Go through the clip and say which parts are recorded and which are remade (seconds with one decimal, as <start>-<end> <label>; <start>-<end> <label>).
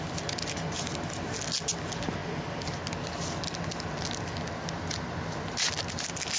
0.0-6.4 recorded